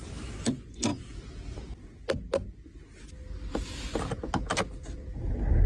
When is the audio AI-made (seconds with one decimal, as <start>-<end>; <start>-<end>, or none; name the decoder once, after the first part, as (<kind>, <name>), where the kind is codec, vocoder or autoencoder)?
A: none